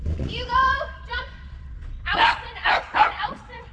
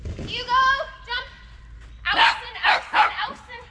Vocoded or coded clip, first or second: first